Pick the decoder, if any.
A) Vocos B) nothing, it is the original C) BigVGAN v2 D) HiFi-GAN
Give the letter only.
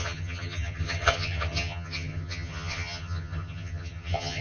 D